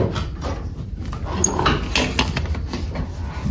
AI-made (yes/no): no